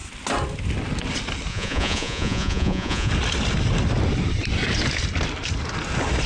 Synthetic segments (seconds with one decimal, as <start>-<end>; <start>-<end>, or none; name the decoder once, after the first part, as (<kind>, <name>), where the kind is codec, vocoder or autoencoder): 1.5-3.1 (vocoder, Vocos)